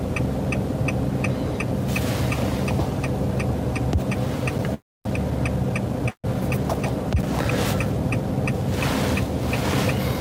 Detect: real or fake real